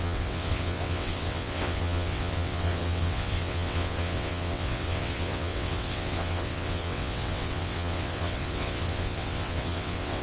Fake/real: fake